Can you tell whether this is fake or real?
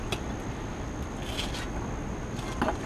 real